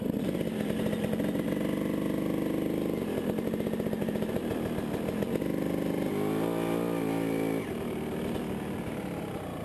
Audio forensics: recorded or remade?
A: recorded